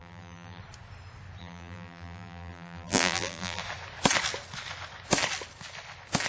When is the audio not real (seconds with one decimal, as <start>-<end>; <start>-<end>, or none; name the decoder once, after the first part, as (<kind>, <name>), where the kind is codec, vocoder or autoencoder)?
0.0-0.6 (vocoder, BigVGAN v2); 1.4-3.6